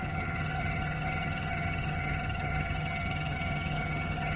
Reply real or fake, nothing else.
fake